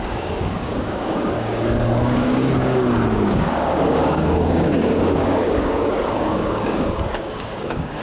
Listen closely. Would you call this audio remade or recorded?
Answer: remade